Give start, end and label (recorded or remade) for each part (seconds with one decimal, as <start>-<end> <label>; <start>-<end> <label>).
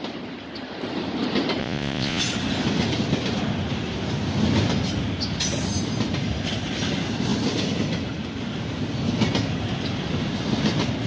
0.0-1.6 recorded; 1.6-2.2 remade; 2.2-11.1 recorded